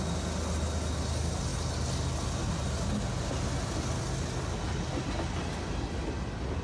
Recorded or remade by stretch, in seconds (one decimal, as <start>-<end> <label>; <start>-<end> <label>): 0.0-6.6 recorded